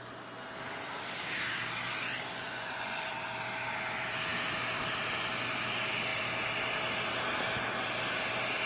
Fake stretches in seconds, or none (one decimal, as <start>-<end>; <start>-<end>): 2.3-3.1